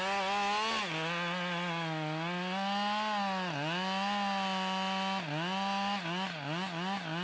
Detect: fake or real real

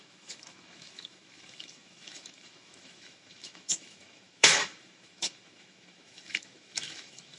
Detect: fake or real fake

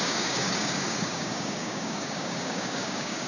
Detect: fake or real fake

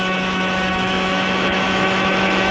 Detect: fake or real fake